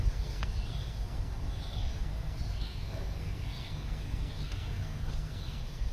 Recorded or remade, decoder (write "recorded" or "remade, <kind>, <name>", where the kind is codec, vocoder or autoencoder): remade, codec, SNAC